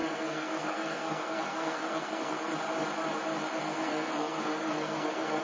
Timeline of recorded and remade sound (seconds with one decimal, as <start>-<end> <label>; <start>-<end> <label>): 0.0-2.5 remade; 2.5-3.6 recorded; 3.6-5.4 remade